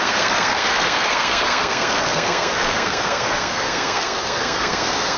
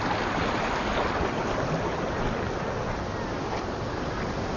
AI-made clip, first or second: first